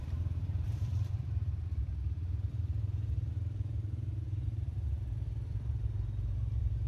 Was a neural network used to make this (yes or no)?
yes